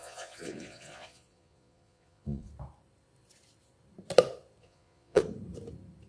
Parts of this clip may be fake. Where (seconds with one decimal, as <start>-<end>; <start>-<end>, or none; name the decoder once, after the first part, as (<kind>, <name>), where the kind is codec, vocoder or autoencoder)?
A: 0.0-2.5 (vocoder, Vocos); 4.6-5.2